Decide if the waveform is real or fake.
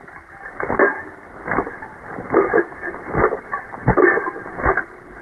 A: fake